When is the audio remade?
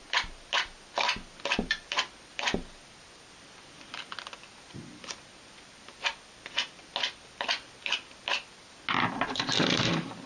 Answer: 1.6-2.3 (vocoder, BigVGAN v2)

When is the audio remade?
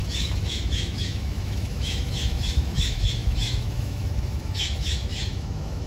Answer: 0.0-5.9 (autoencoder, DAC-VAE)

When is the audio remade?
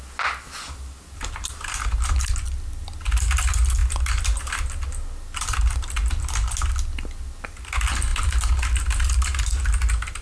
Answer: none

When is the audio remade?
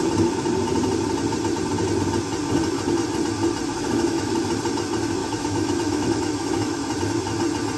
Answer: 3.7-4.3 (autoencoder, DAC-VAE); 5.2-6.8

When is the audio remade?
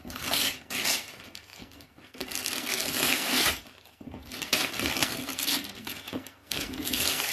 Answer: 0.0-7.3 (codec, SNAC)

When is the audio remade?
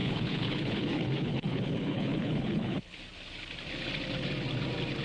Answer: 0.0-3.0 (codec, HILCodec)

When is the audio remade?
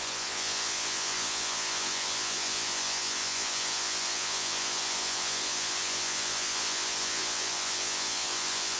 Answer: 0.0-8.8 (vocoder, Vocos)